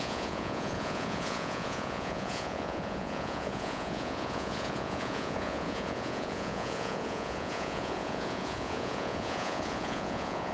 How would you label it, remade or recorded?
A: remade